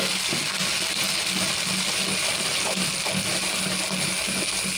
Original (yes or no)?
yes